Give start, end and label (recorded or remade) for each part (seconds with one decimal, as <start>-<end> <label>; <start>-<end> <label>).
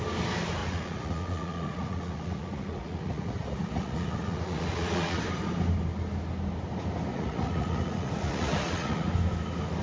0.0-0.6 recorded; 0.6-5.2 remade; 5.2-7.1 recorded; 7.1-9.1 remade; 9.1-9.8 recorded